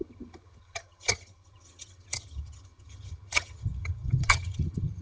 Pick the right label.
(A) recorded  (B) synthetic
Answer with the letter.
B